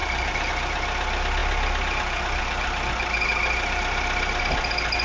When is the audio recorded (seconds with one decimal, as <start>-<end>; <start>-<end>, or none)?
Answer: 0.0-5.0